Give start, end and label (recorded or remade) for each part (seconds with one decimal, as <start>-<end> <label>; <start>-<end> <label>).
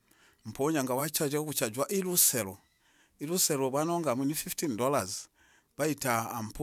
0.0-1.0 recorded; 1.0-5.0 remade; 5.0-6.6 recorded